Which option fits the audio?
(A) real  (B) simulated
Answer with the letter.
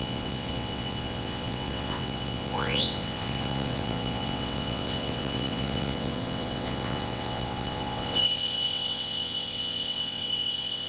B